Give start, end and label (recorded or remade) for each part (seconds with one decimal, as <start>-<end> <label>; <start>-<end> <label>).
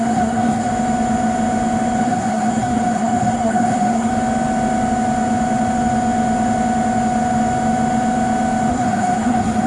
0.0-0.7 remade; 0.7-2.0 recorded; 2.0-4.1 remade; 4.1-8.7 recorded; 8.7-9.7 remade